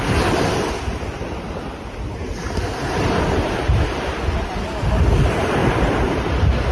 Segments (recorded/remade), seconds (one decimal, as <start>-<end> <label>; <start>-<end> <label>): 0.0-6.7 recorded